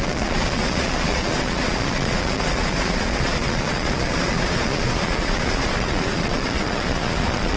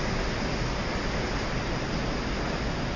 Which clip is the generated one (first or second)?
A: first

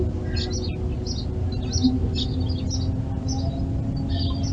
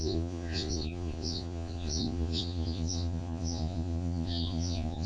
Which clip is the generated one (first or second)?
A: second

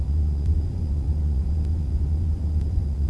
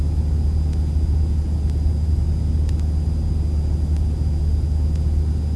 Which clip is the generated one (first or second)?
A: first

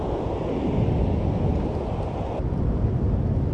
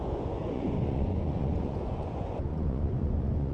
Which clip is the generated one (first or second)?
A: second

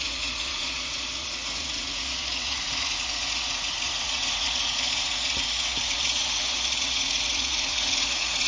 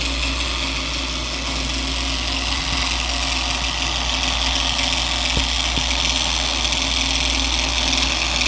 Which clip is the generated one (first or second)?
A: first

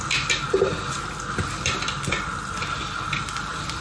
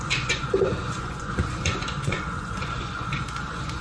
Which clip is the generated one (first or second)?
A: second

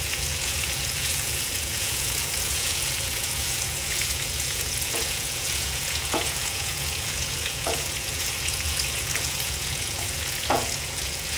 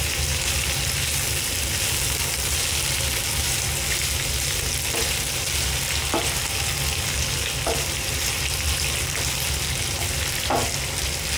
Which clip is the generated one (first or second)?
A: first